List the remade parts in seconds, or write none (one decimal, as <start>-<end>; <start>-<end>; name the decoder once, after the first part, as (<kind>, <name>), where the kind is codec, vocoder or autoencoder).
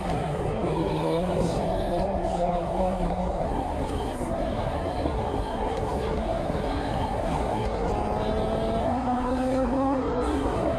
0.0-7.9 (codec, SNAC); 8.8-10.8